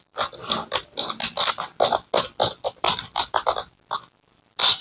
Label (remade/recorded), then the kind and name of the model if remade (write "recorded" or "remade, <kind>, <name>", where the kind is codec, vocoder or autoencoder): recorded